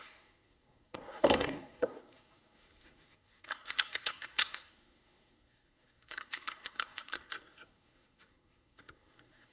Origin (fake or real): fake